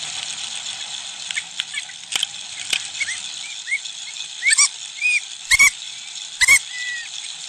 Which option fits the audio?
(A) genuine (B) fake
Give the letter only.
B